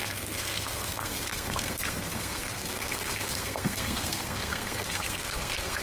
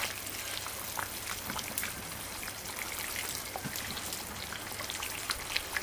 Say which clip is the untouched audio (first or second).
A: second